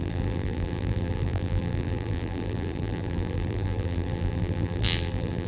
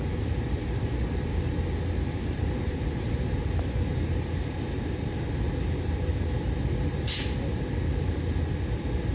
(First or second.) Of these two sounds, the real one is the second